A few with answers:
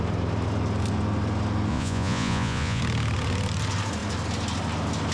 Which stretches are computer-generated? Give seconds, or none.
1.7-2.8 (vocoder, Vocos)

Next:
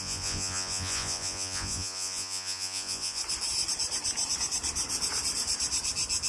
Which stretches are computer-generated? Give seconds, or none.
0.0-3.2 (vocoder, Vocos)